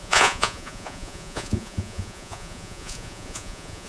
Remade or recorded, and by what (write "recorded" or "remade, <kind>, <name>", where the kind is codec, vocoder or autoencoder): remade, vocoder, Vocos